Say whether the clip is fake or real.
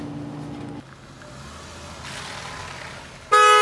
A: real